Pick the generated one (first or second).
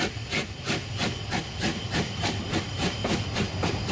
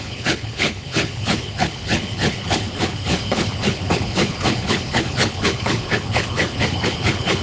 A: second